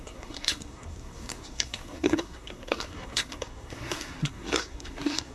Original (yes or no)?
no